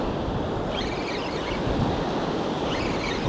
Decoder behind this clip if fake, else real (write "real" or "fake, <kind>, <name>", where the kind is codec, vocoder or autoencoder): real